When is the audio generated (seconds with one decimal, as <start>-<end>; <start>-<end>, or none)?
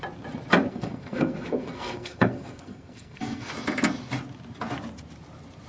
0.7-3.5